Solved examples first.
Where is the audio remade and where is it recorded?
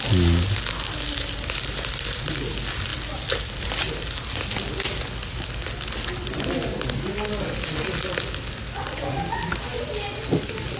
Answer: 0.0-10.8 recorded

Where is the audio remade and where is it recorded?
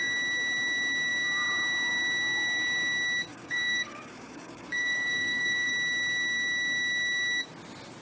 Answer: 0.0-3.3 recorded; 3.3-5.7 remade; 5.7-8.0 recorded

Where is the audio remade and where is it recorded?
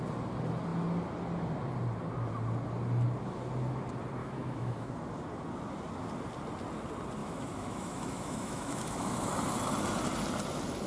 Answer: 0.0-4.2 recorded; 4.2-4.9 remade; 4.9-7.2 recorded; 7.2-9.3 remade; 9.3-10.9 recorded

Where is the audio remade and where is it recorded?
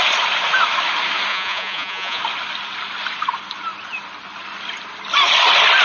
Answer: 0.0-1.3 recorded; 1.3-2.2 remade; 2.2-5.8 recorded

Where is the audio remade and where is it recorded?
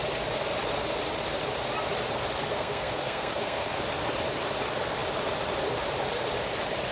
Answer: 0.0-2.5 recorded; 2.5-3.8 remade; 3.8-6.9 recorded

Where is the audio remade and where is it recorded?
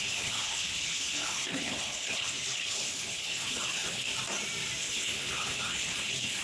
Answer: 0.0-4.1 remade; 4.1-4.8 recorded; 4.8-6.4 remade